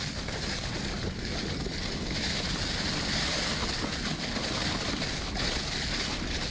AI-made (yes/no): no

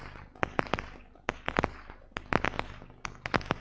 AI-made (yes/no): no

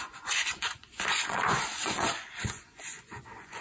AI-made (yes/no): yes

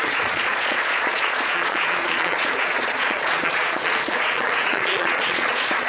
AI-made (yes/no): yes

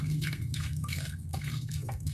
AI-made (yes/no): yes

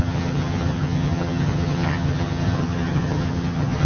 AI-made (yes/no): yes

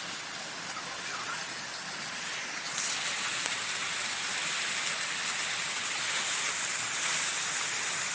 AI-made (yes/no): no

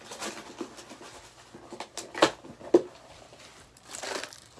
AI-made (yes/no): no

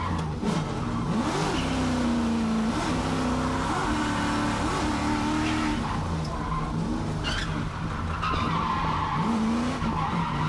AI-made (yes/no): no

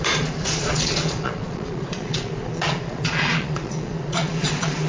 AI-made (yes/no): yes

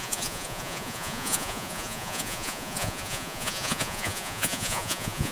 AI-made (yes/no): yes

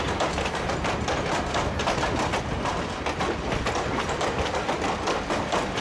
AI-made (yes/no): no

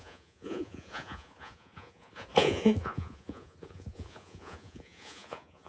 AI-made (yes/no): yes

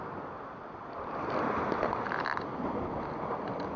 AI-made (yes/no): no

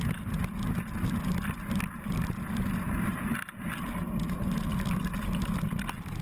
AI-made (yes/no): no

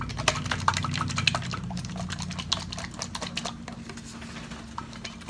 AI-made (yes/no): no